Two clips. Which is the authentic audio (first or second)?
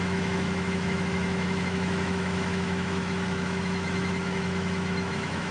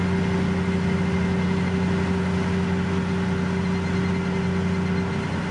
second